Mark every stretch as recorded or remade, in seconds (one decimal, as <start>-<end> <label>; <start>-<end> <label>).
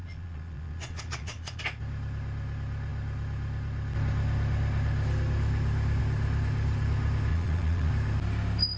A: 0.0-1.6 remade; 1.6-7.3 recorded; 7.3-7.9 remade; 7.9-8.8 recorded